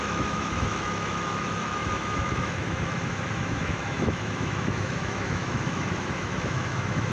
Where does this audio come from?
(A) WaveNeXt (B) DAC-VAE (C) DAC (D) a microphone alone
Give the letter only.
B